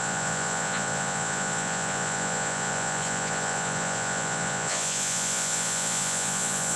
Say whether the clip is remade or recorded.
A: remade